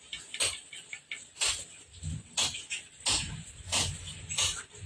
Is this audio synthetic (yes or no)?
no